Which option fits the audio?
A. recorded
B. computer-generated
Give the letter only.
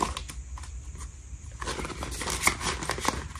A